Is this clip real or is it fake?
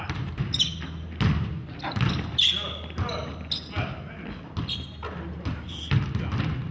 real